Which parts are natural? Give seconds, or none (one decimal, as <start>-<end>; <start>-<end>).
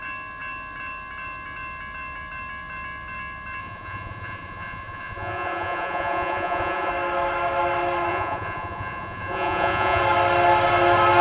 0.0-3.6; 6.9-8.1; 10.0-11.2